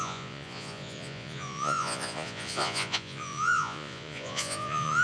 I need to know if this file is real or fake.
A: fake